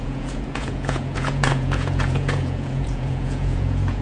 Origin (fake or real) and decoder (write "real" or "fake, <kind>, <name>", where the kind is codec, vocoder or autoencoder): fake, vocoder, Vocos